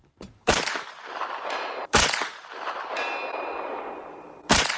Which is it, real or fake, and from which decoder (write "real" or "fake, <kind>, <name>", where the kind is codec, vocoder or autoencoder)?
fake, vocoder, BigVGAN v2